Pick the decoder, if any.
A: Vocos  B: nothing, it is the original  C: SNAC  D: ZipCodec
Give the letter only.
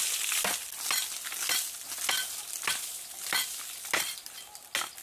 B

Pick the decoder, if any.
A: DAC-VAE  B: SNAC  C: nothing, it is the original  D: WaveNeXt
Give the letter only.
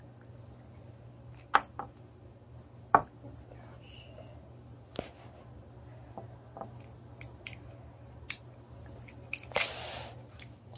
C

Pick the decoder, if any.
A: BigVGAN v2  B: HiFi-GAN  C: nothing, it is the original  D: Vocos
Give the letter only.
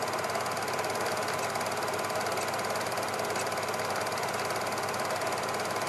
C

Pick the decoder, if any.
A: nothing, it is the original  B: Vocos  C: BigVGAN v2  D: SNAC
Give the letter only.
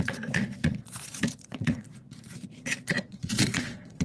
B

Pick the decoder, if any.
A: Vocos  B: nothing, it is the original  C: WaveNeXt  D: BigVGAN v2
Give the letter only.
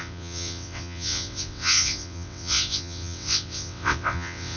C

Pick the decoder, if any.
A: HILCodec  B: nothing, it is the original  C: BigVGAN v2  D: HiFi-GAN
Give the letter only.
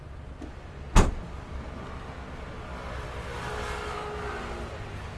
B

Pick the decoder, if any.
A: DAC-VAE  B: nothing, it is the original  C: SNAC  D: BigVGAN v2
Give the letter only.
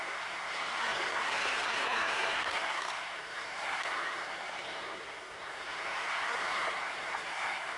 C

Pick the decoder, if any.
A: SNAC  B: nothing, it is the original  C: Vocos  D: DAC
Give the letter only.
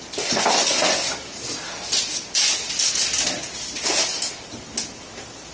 B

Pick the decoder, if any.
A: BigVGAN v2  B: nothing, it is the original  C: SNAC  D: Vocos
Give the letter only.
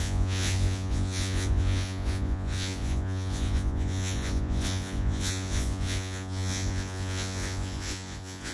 D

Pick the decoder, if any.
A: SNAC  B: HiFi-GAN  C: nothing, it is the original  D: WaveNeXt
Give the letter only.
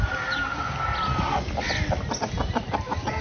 C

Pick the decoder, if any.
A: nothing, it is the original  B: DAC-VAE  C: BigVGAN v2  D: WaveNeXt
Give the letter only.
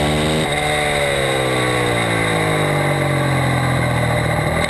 A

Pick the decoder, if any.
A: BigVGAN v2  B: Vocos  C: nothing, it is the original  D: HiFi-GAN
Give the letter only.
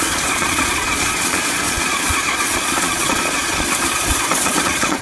B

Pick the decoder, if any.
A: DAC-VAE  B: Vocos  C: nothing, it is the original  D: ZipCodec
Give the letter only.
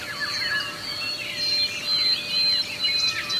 C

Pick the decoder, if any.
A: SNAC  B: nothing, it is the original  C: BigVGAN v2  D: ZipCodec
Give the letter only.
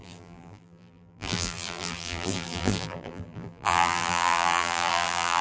C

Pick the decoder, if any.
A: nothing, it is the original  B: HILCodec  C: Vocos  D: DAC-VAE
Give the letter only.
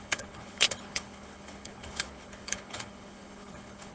B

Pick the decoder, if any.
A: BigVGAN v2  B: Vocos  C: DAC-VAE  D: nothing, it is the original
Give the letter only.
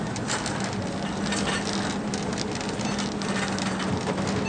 D